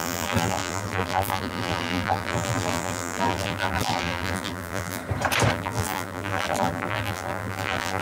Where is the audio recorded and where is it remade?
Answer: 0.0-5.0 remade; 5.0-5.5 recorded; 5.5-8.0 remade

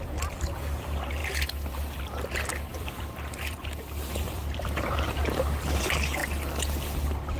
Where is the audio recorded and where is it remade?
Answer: 0.0-2.7 recorded; 2.7-5.8 remade; 5.8-7.4 recorded

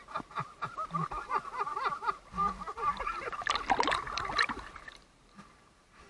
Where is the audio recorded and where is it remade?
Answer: 0.0-2.4 recorded; 2.4-3.9 remade; 3.9-6.1 recorded

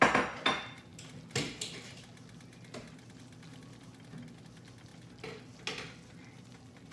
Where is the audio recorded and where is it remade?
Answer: 0.0-6.9 recorded

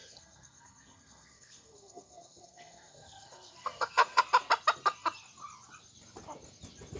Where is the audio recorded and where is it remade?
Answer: 0.0-4.2 remade; 4.2-7.0 recorded

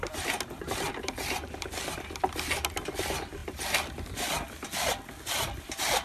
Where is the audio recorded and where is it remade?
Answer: 0.0-6.0 recorded

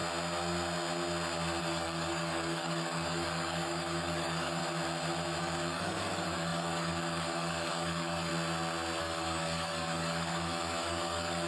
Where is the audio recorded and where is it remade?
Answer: 0.0-1.6 recorded; 1.6-4.6 remade; 4.6-5.4 recorded; 5.4-8.3 remade; 8.3-9.0 recorded; 9.0-11.5 remade

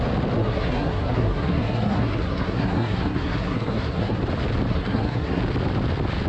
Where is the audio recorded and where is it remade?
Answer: 0.0-0.4 recorded; 0.4-4.2 remade; 4.2-4.7 recorded; 4.7-5.4 remade; 5.4-6.3 recorded